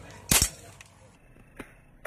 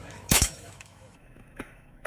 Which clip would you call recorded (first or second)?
first